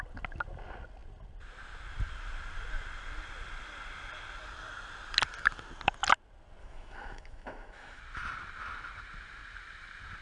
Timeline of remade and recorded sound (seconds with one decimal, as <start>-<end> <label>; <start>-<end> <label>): 0.0-6.6 recorded; 6.6-8.0 remade; 8.0-10.2 recorded